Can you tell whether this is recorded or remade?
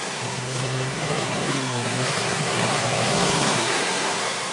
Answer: remade